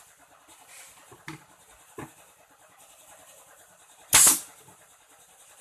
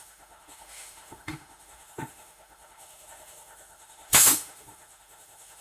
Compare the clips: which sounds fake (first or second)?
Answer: second